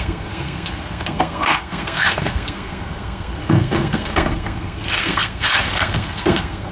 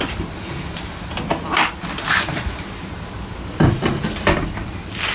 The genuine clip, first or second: second